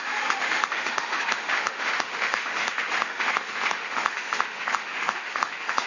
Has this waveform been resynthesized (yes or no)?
yes